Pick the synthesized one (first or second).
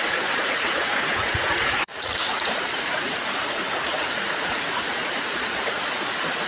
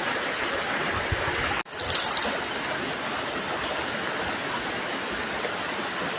first